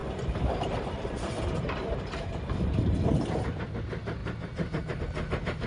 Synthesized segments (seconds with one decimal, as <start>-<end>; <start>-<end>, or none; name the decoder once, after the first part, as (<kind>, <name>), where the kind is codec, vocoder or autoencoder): 0.0-4.2 (vocoder, BigVGAN v2); 5.0-5.7